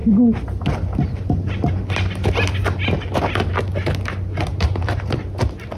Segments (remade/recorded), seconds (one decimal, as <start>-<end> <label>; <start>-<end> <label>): 0.0-4.5 recorded; 4.5-5.1 remade; 5.1-5.8 recorded